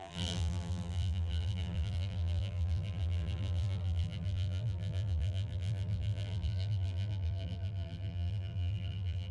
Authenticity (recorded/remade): remade